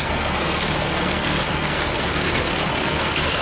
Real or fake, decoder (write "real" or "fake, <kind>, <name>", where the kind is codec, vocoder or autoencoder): fake, codec, SNAC